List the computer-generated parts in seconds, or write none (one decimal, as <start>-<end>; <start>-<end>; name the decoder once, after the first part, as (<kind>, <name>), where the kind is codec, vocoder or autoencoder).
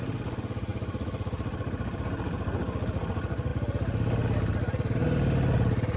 none